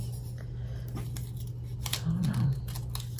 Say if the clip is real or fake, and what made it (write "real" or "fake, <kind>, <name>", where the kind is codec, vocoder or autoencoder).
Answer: real